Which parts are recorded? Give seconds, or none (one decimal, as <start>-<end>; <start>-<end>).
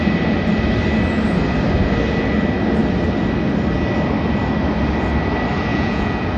0.0-5.7